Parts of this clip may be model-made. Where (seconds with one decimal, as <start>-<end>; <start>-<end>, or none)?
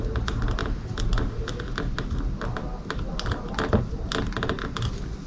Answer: none